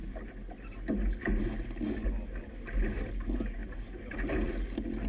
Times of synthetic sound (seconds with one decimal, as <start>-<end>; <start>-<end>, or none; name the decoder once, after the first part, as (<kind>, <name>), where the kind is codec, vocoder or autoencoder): none